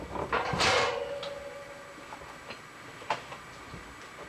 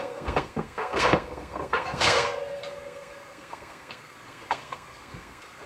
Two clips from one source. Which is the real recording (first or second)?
first